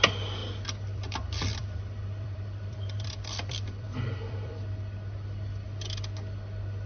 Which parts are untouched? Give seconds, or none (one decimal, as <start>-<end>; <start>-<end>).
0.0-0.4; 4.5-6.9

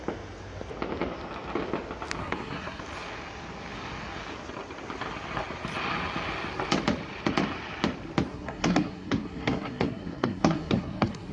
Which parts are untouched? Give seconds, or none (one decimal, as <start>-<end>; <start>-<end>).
0.0-2.2; 2.8-8.3

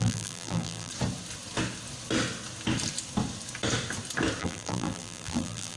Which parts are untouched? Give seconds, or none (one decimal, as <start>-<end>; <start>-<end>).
0.9-4.4